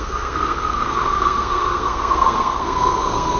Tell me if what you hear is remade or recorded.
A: remade